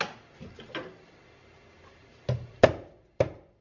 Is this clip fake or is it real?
real